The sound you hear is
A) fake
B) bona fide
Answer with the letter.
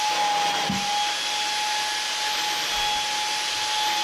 B